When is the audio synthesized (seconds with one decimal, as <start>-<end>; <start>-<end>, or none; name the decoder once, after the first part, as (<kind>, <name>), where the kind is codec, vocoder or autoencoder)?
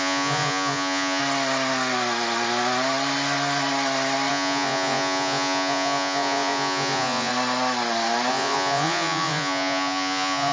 0.0-1.2 (vocoder, Vocos); 4.3-7.3; 8.3-10.5